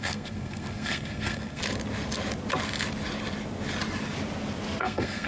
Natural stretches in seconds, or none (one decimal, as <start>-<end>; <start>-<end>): 1.6-4.8